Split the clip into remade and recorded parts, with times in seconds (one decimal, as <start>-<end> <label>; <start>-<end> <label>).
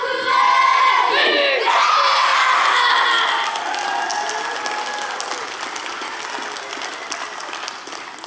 0.0-8.3 recorded